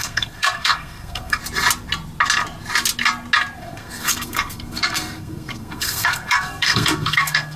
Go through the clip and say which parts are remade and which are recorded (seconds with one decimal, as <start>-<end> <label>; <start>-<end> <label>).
0.0-1.4 remade; 1.4-3.6 recorded; 3.6-7.6 remade